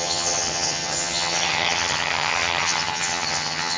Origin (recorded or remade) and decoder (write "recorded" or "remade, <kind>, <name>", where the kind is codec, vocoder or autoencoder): remade, vocoder, HiFi-GAN